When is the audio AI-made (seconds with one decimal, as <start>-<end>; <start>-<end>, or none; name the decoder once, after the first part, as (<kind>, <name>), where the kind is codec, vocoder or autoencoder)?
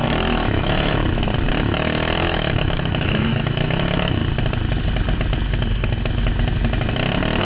0.0-1.0 (autoencoder, DAC-VAE); 1.6-4.2